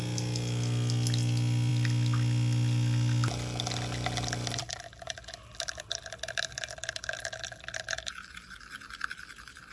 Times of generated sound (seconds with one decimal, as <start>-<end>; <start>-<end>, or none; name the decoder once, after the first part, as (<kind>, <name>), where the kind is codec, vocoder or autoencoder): none